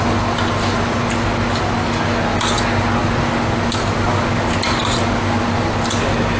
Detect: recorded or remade recorded